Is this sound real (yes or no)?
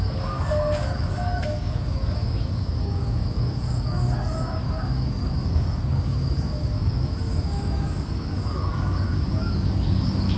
no